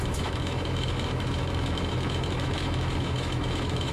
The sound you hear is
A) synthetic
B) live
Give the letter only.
A